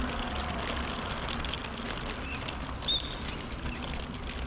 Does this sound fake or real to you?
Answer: real